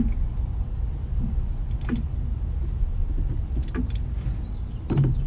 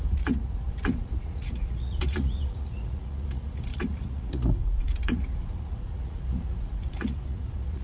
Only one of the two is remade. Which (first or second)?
second